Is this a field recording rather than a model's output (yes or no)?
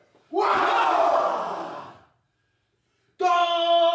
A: yes